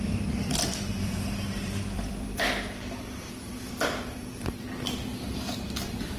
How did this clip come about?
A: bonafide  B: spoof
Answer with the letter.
B